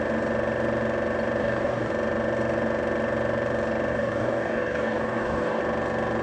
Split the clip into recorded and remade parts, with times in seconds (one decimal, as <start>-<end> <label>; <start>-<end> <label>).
0.0-1.4 recorded; 1.4-1.9 remade; 1.9-3.9 recorded; 3.9-5.6 remade; 5.6-6.2 recorded